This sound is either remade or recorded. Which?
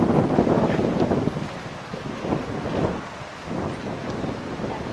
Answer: recorded